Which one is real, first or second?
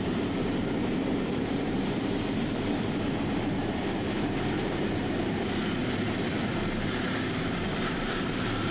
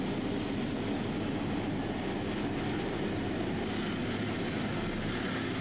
second